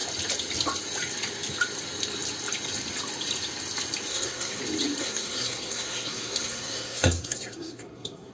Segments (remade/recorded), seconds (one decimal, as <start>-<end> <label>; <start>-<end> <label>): 0.0-4.1 recorded; 4.1-4.6 remade; 4.6-5.0 recorded; 5.0-8.3 remade